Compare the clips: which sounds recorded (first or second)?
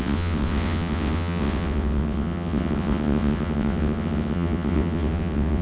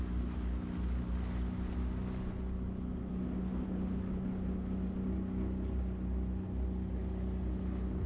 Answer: second